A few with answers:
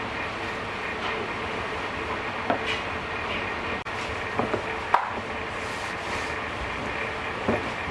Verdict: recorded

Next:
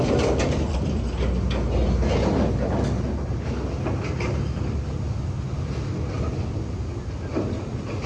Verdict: recorded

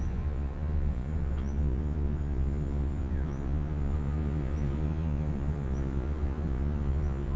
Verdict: remade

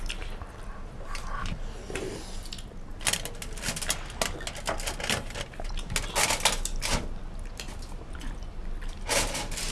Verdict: recorded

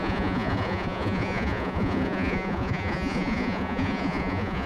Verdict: remade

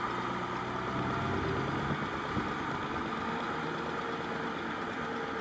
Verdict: recorded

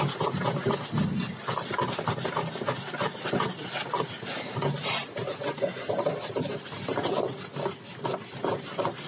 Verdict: recorded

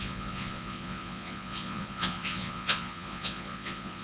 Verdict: remade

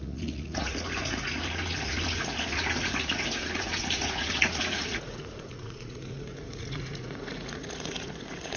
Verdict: remade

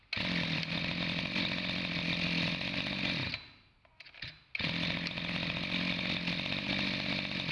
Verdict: recorded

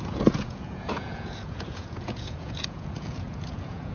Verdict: remade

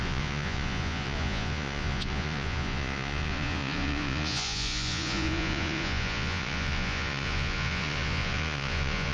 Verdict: remade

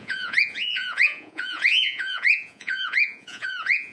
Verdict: remade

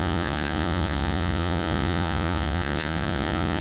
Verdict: remade